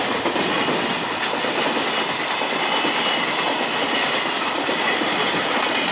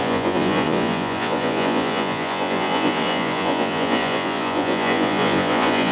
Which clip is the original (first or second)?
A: first